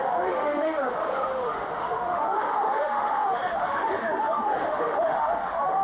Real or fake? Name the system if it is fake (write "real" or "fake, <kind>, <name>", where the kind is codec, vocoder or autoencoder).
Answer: fake, autoencoder, DAC-VAE